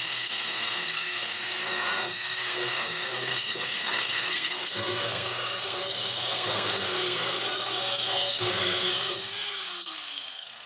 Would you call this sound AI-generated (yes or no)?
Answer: yes